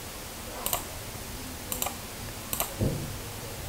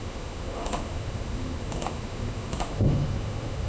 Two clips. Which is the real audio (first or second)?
first